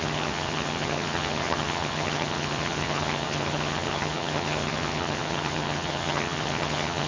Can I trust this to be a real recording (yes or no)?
no